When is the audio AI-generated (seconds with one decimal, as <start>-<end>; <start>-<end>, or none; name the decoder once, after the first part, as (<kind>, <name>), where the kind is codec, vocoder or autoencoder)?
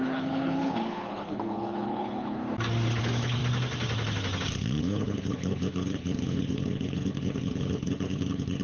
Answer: 0.0-2.4 (codec, HILCodec); 3.0-3.4; 4.8-8.6